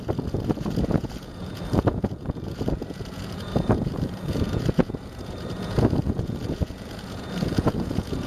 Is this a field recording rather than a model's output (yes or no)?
no